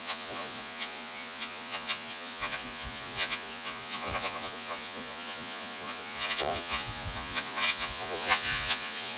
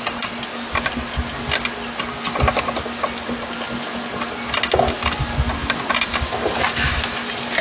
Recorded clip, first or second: second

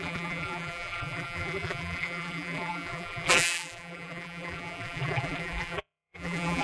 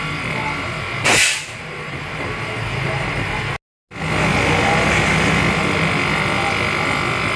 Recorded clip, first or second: second